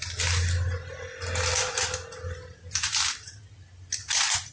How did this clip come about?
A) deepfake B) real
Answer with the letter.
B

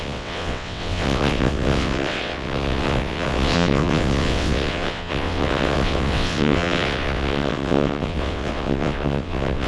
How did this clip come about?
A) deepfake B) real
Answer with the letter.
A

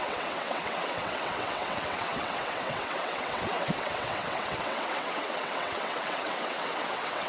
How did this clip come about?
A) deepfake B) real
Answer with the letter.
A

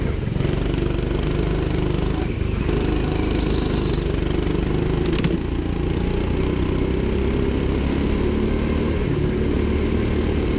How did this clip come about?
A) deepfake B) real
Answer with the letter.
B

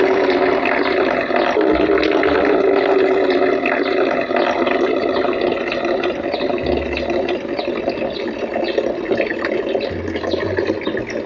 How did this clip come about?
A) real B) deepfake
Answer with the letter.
A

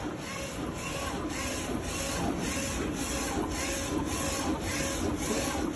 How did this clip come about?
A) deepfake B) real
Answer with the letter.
B